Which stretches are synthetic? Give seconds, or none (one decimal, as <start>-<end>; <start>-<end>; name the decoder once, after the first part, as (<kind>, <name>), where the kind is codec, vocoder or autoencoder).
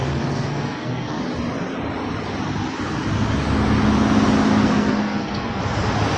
0.0-1.2 (codec, SNAC); 4.6-5.6